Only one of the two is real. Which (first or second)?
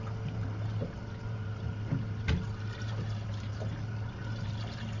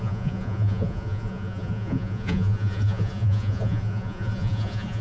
first